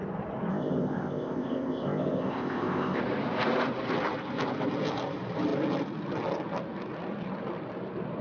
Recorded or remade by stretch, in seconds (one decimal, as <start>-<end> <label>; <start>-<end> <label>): 0.0-0.5 recorded; 0.5-3.0 remade; 3.0-8.2 recorded